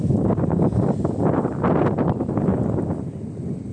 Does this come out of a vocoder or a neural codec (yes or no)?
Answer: no